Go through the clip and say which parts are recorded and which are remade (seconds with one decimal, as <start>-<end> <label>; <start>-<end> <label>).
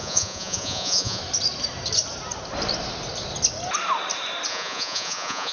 0.0-1.2 remade; 1.2-4.5 recorded; 4.5-5.5 remade